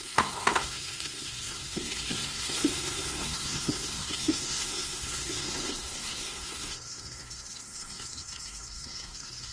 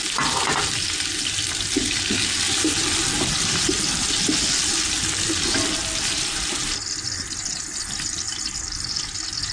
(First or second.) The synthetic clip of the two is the first